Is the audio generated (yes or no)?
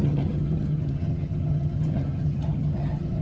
yes